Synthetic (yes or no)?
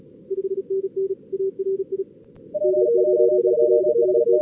no